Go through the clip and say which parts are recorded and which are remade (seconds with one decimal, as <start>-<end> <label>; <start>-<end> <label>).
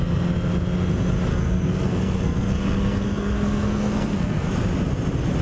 0.0-1.3 recorded; 1.3-4.5 remade; 4.5-5.4 recorded